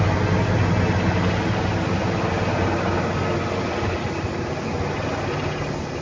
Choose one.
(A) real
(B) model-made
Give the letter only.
A